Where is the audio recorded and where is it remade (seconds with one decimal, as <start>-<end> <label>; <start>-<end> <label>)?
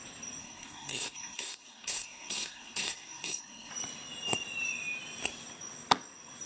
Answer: 0.0-0.4 recorded; 0.4-3.7 remade; 3.7-6.5 recorded